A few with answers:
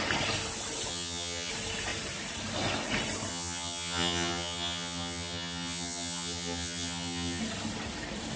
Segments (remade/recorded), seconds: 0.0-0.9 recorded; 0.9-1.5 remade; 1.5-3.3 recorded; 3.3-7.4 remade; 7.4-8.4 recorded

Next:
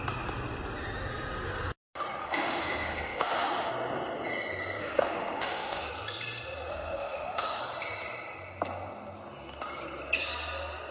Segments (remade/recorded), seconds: 0.0-2.2 recorded; 2.2-3.7 remade; 3.7-4.8 recorded; 4.8-5.9 remade; 5.9-6.7 recorded; 6.7-7.6 remade; 7.6-10.9 recorded

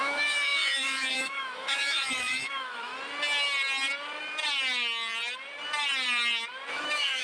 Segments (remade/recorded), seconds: 0.0-2.9 remade; 2.9-6.7 recorded; 6.7-7.2 remade

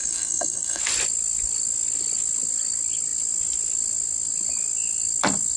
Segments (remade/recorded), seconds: 0.0-0.8 remade; 0.8-5.6 recorded

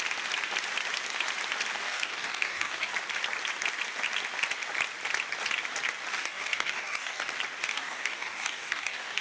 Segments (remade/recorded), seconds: 0.0-1.7 recorded; 1.7-2.9 remade; 2.9-6.1 recorded; 6.1-7.3 remade; 7.3-7.7 recorded; 7.7-9.2 remade

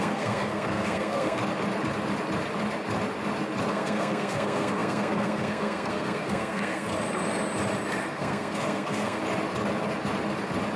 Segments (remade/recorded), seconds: 0.0-1.4 remade; 1.4-3.7 recorded; 3.7-6.9 remade; 6.9-8.0 recorded; 8.0-9.2 remade; 9.2-10.8 recorded